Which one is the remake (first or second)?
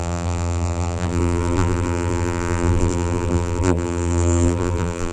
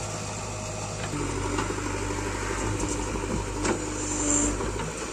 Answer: first